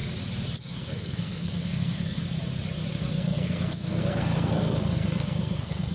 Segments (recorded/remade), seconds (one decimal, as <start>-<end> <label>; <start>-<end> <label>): 0.0-0.6 recorded; 0.6-2.2 remade; 2.2-2.9 recorded; 2.9-5.9 remade